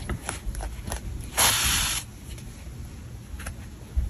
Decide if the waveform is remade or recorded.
recorded